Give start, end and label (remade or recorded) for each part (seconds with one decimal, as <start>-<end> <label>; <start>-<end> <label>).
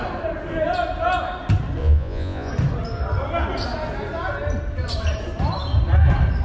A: 0.0-1.8 recorded; 1.8-2.5 remade; 2.5-6.4 recorded